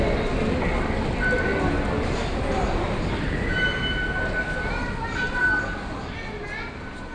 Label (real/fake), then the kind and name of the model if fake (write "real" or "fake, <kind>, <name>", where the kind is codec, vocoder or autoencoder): real